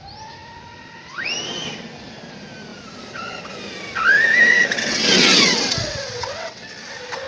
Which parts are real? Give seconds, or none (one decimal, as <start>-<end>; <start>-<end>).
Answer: 0.0-4.5; 6.6-7.3